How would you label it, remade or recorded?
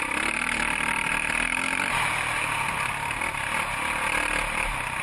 recorded